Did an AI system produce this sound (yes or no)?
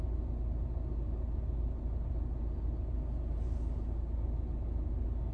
no